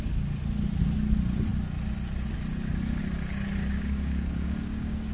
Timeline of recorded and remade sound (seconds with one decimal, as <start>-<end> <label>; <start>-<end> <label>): 0.0-3.6 recorded; 3.6-5.1 remade